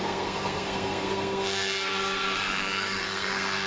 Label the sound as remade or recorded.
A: remade